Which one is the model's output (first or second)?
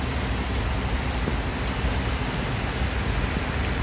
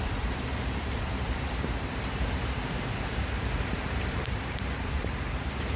second